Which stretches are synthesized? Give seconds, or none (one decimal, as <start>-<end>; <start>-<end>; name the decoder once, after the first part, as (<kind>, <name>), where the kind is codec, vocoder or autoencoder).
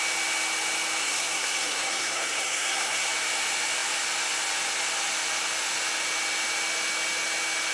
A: 1.0-3.1 (codec, SNAC)